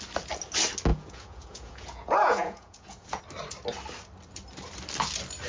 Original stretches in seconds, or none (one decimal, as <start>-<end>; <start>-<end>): 0.0-0.9; 3.2-5.5

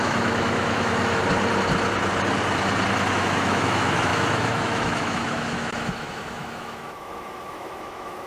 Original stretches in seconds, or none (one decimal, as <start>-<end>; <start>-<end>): 1.2-3.1

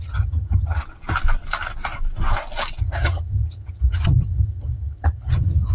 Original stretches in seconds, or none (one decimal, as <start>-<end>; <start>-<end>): 0.8-2.8

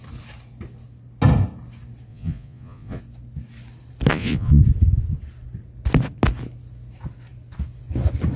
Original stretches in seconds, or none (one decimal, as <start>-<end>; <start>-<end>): 0.0-2.1; 3.0-4.1; 4.6-8.4

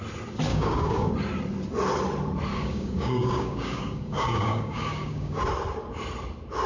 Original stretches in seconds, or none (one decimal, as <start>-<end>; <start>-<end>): 0.0-0.5; 1.1-2.5; 5.4-6.7